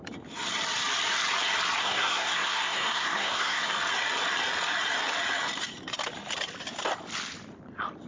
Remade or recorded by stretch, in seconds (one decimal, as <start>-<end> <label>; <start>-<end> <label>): 0.0-1.8 recorded; 1.8-3.7 remade; 3.7-8.1 recorded